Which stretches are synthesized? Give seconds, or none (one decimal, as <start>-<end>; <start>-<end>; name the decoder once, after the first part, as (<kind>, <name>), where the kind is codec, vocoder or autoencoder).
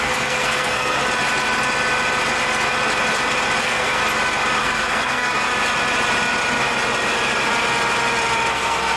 0.0-1.0 (codec, SNAC); 3.6-4.0; 4.6-5.5; 8.5-9.0